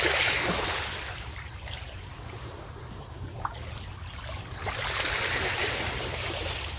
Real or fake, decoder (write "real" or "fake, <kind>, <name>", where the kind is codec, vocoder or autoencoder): fake, vocoder, BigVGAN v2